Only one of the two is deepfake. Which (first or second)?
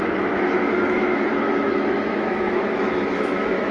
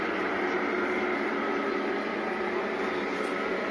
first